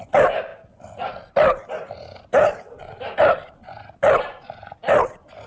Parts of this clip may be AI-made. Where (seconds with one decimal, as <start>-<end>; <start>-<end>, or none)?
none

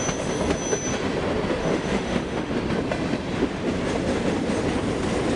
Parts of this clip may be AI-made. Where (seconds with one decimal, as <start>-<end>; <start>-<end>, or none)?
1.6-2.5

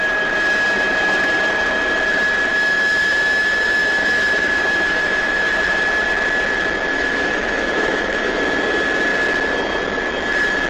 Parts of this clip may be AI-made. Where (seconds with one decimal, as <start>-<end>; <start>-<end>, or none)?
2.5-5.5; 6.9-8.4

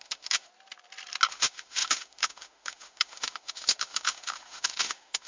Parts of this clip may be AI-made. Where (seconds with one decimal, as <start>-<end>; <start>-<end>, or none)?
0.0-0.5; 1.3-5.3

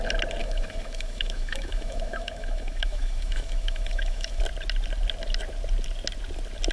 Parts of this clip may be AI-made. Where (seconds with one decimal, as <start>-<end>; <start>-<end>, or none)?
0.4-4.4